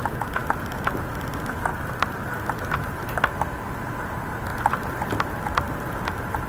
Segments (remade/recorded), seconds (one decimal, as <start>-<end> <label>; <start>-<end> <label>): 0.0-1.7 recorded; 1.7-2.3 remade; 2.3-4.5 recorded; 4.5-5.2 remade; 5.2-6.5 recorded